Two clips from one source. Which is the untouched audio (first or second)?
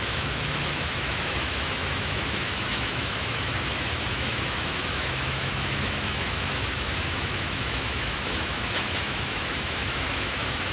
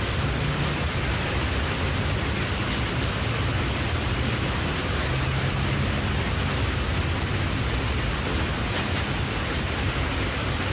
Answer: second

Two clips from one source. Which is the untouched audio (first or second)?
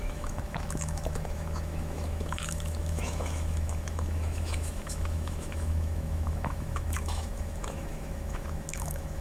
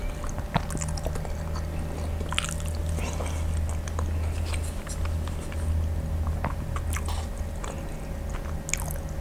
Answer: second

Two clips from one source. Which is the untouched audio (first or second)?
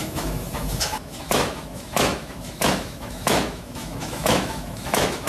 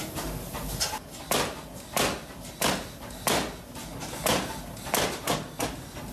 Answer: second